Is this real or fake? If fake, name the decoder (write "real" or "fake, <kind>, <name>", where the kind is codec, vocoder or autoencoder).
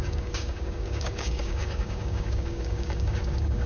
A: fake, codec, DAC